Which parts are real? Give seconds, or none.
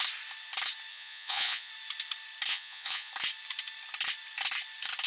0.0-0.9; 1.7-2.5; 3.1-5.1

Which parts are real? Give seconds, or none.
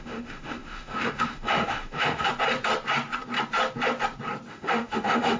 2.3-4.5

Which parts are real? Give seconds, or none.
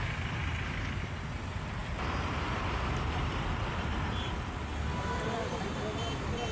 0.0-1.8; 5.6-6.5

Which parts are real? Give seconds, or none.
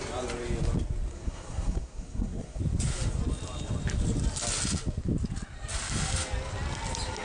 0.0-1.1; 2.6-7.2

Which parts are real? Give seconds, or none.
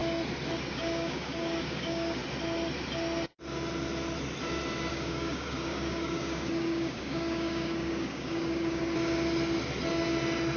0.0-0.7; 2.2-4.9; 8.8-10.6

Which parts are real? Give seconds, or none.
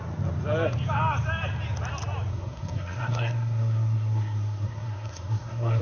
0.0-2.3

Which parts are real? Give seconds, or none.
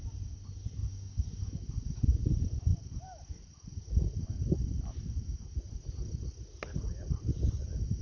0.0-8.0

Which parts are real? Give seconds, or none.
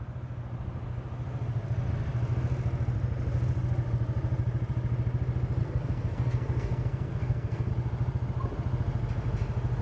0.0-5.6; 7.7-9.8